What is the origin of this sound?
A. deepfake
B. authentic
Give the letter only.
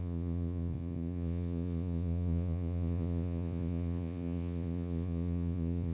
A